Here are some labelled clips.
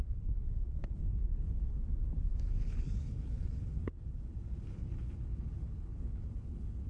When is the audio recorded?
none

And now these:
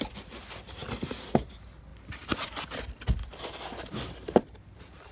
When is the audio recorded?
0.0-5.1

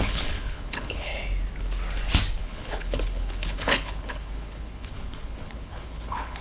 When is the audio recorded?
1.1-2.4

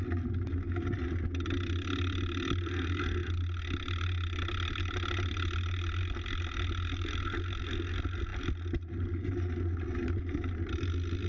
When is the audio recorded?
0.0-11.3

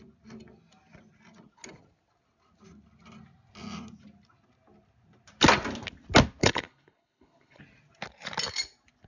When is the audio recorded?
0.0-6.4; 7.6-9.1

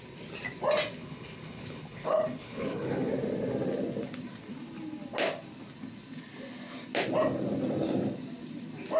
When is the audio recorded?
0.0-1.0; 3.1-9.0

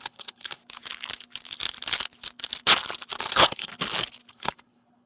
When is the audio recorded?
0.6-3.3; 3.7-4.3